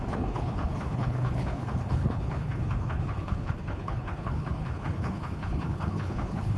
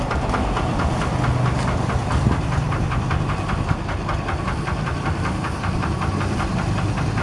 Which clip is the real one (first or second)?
second